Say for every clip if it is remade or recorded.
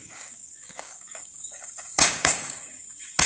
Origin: remade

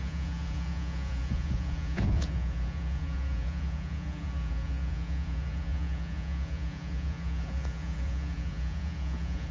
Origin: remade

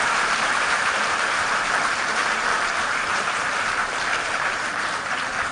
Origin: remade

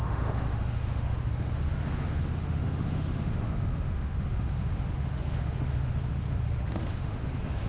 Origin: remade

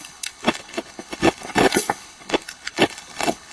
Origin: remade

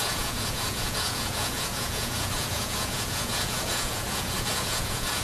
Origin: remade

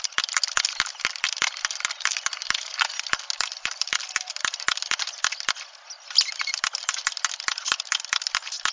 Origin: recorded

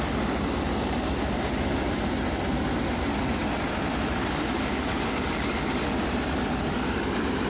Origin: recorded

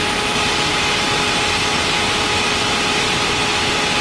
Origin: recorded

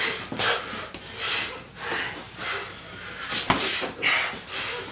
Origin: recorded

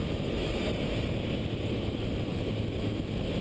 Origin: recorded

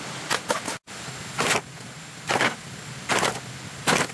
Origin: recorded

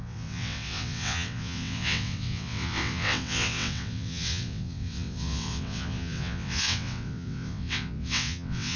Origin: remade